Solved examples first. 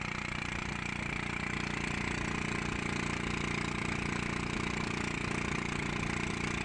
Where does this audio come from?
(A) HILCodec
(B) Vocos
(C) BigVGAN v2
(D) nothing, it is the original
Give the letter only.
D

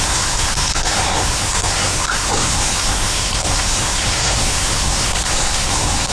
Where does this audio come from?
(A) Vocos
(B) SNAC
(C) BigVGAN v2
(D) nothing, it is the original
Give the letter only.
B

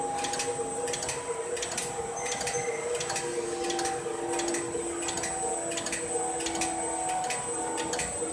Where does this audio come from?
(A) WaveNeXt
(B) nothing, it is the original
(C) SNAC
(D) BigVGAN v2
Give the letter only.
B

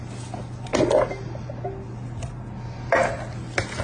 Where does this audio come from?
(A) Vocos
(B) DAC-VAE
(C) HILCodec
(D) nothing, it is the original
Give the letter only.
D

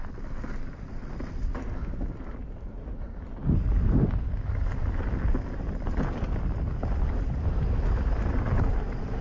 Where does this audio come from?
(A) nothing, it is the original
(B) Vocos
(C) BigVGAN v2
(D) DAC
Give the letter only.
A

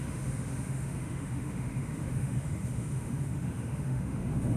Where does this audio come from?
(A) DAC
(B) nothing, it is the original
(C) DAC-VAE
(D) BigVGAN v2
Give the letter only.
C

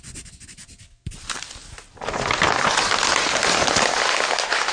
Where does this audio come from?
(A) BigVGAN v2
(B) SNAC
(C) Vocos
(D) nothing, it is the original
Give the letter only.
D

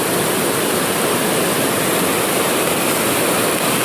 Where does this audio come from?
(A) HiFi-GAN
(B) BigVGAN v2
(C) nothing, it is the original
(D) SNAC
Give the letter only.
C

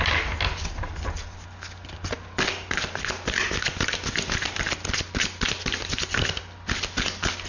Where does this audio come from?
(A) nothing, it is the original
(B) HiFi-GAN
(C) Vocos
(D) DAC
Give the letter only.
A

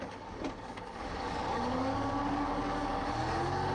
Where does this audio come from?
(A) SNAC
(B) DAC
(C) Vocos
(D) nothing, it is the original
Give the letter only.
B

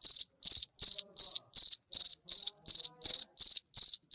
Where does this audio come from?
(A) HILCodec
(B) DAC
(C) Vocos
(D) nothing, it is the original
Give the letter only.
D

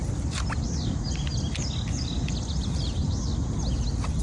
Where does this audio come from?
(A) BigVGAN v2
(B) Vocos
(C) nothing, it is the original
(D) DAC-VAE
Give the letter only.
C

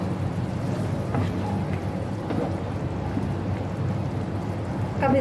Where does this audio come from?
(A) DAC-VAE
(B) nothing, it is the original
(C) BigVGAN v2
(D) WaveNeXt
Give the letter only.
B